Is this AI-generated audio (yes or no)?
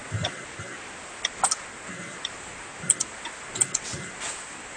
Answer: no